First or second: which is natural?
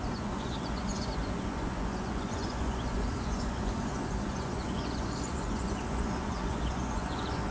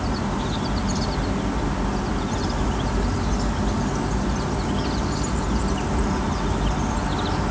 second